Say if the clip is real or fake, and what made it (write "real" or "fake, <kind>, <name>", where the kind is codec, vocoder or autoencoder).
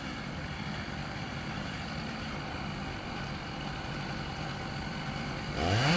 fake, vocoder, BigVGAN v2